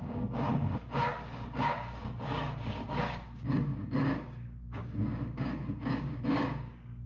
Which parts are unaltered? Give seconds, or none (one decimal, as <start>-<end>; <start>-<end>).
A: none